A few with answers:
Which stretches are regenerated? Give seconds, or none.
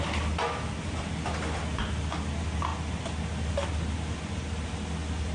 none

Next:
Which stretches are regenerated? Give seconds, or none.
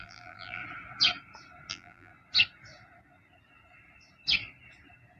0.0-0.6 (vocoder, BigVGAN v2); 1.7-2.1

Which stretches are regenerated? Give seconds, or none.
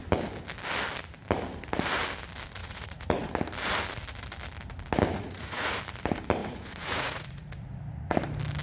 2.6-3.3 (vocoder, Vocos); 5.1-5.8; 6.4-7.8